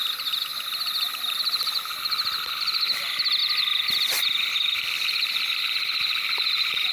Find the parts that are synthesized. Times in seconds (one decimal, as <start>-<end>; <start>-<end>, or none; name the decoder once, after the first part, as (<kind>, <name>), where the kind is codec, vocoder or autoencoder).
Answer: 0.5-2.5 (vocoder, BigVGAN v2); 3.4-5.3